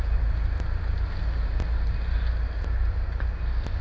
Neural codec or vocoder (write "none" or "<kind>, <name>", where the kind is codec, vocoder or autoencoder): none